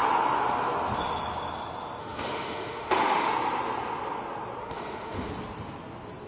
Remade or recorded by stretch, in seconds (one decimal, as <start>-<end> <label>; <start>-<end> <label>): 0.0-2.0 recorded; 2.0-3.3 remade; 3.3-4.6 recorded; 4.6-5.3 remade; 5.3-6.3 recorded